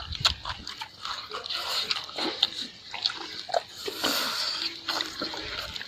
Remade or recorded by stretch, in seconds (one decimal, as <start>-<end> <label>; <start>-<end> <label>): 0.0-5.9 recorded